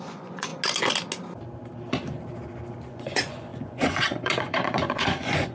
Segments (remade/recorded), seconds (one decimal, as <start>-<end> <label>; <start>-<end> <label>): 0.0-0.5 remade; 0.5-2.9 recorded; 2.9-5.5 remade